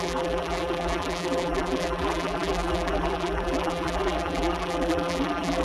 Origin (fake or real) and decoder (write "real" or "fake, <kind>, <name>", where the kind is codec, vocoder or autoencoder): fake, vocoder, BigVGAN v2